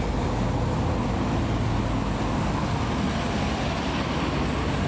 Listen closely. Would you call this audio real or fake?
real